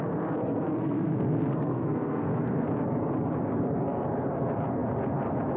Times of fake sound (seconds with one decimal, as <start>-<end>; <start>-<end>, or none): 0.8-2.7